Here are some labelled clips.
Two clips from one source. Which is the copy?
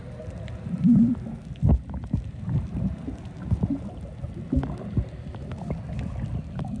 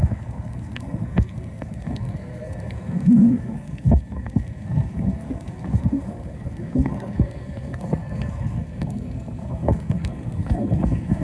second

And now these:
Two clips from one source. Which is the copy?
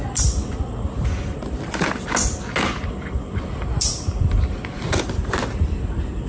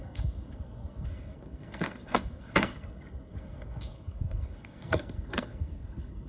second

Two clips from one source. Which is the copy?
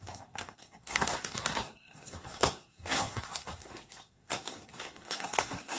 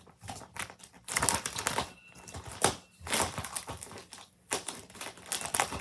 first